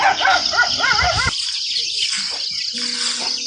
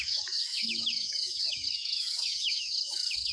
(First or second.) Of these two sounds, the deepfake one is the second